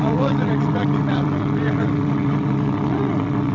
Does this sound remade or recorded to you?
remade